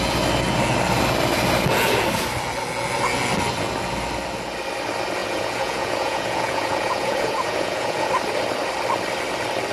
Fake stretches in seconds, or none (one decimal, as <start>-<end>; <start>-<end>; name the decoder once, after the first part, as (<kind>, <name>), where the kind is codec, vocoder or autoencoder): 5.2-8.1 (vocoder, Vocos)